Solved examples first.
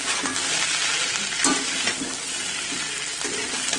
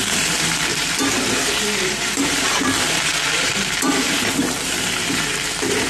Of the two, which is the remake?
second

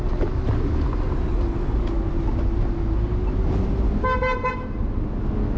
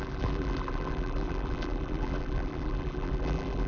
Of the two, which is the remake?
second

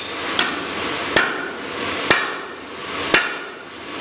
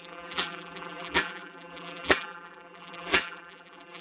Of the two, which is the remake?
second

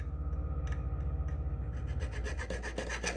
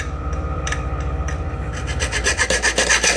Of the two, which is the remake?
second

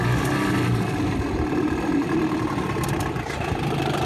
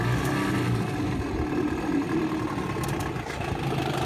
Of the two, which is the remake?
first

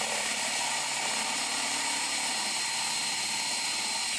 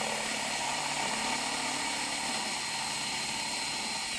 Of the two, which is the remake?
first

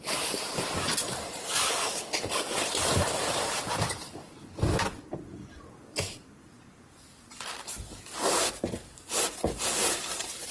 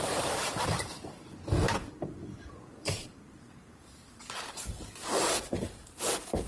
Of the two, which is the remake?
second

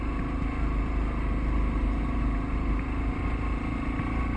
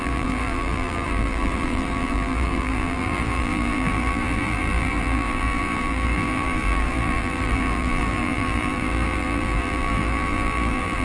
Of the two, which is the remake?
second